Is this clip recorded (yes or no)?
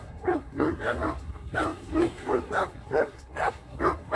no